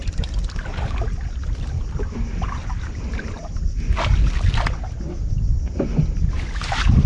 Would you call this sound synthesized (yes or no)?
no